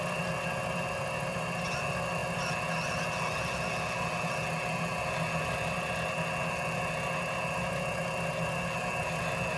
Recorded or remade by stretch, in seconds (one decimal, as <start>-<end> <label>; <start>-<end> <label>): 0.0-9.6 recorded